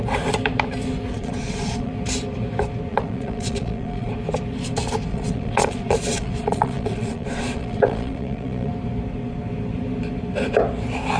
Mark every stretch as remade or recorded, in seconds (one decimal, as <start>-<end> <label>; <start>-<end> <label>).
0.0-1.1 recorded; 1.1-1.9 remade; 1.9-2.9 recorded; 2.9-4.1 remade; 4.1-5.1 recorded; 5.1-8.7 remade; 8.7-11.2 recorded